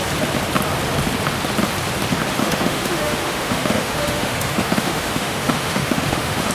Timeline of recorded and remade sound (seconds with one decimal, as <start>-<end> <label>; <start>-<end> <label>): 0.0-2.4 recorded; 2.4-6.5 remade